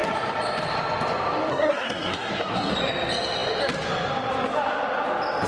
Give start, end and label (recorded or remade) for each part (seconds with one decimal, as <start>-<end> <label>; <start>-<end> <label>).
0.0-1.5 recorded; 1.5-2.7 remade; 2.7-5.5 recorded